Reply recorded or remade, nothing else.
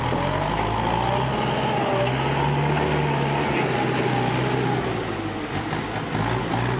recorded